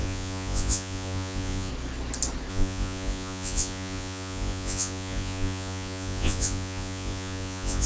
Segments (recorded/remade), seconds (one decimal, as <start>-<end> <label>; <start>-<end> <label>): 0.0-1.7 remade; 1.7-2.5 recorded; 2.5-7.9 remade

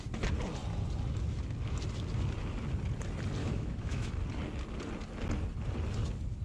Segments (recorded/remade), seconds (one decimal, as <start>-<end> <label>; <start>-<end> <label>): 0.0-3.4 recorded; 3.4-4.1 remade; 4.1-6.4 recorded